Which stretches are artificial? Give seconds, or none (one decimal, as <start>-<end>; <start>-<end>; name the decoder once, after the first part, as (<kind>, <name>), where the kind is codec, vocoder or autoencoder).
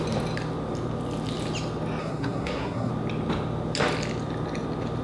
2.0-2.9 (codec, SNAC)